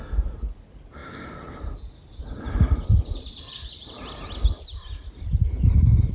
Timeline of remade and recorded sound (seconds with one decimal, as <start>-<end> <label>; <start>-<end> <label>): 0.0-1.0 remade; 1.0-2.2 recorded; 2.2-6.1 remade